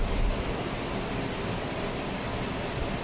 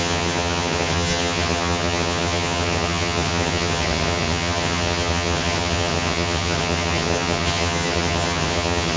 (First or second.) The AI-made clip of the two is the second